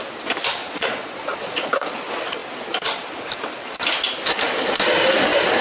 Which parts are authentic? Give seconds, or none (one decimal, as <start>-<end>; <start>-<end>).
0.0-0.6; 2.0-5.6

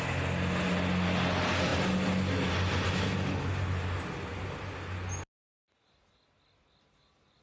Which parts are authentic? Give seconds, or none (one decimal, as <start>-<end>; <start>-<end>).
0.0-7.4